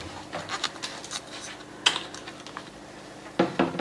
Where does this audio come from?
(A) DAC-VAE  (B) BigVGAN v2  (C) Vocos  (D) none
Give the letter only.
D